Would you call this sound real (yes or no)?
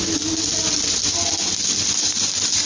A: yes